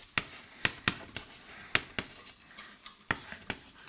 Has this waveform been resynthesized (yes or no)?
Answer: no